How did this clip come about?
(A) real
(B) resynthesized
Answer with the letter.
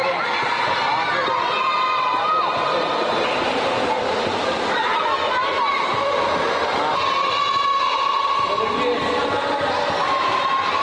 A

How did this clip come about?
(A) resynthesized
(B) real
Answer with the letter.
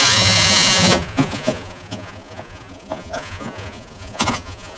A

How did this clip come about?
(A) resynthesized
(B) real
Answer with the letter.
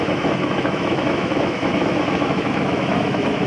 A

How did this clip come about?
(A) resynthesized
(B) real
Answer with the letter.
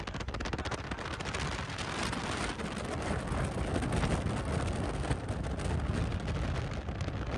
B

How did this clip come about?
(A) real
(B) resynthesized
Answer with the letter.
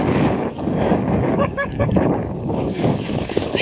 B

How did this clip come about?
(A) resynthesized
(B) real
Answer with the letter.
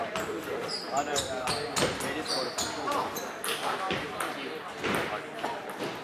B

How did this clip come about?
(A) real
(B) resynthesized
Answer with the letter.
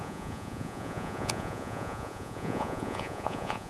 B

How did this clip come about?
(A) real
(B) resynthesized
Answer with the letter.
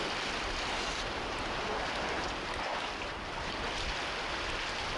A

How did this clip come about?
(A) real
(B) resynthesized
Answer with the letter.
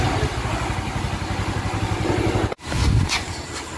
A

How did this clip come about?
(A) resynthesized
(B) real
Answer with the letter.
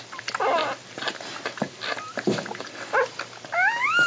B